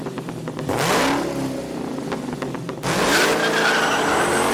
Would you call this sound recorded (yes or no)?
yes